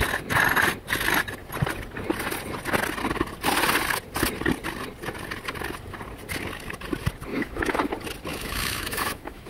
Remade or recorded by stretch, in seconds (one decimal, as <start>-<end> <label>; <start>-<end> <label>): 0.0-7.3 recorded; 7.3-7.9 remade; 7.9-8.3 recorded; 8.3-9.5 remade